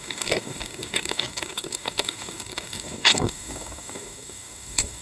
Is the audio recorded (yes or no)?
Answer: no